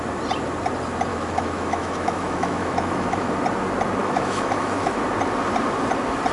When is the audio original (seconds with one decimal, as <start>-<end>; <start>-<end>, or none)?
0.0-1.1; 3.3-4.0; 5.0-6.3